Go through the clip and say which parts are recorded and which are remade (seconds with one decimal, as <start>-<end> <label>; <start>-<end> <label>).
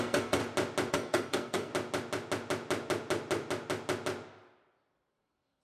0.0-0.4 remade; 0.4-0.9 recorded; 0.9-1.7 remade; 1.7-5.1 recorded; 5.1-5.6 remade